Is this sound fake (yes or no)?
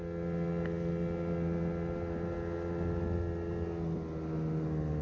no